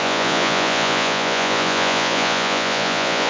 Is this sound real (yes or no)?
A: no